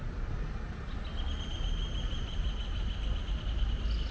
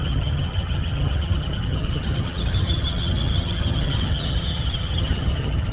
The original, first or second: first